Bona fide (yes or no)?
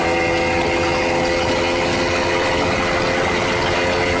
yes